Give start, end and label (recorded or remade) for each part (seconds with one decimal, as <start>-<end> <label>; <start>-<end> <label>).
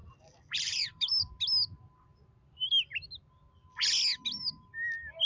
0.0-1.3 remade; 1.3-5.3 recorded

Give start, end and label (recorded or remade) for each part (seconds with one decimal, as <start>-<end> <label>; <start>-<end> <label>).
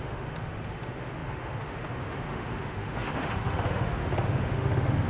0.0-5.1 remade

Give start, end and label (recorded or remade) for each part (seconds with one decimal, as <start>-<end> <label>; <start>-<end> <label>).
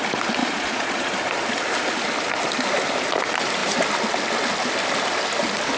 0.0-0.4 recorded; 0.4-1.0 remade; 1.0-5.8 recorded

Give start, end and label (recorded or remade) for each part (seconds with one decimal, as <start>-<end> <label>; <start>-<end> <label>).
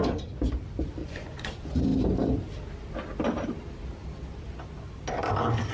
0.0-1.0 recorded; 1.0-1.5 remade; 1.5-5.7 recorded